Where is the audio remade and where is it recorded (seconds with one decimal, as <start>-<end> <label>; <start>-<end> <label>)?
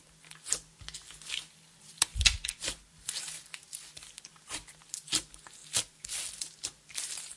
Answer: 0.0-5.6 recorded; 5.6-6.2 remade; 6.2-7.4 recorded